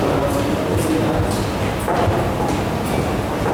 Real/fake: real